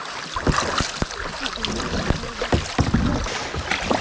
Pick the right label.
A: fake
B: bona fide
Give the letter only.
B